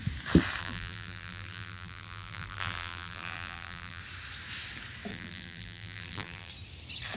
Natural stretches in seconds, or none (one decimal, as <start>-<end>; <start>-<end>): 0.0-0.6; 4.0-5.1; 6.5-7.2